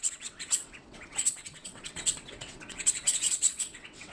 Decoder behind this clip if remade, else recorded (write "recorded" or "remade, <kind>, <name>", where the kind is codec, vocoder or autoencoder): remade, vocoder, WaveNeXt